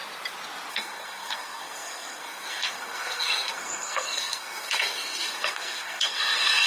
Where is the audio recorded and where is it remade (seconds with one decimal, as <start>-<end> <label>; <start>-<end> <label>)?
0.0-0.7 recorded; 0.7-6.7 remade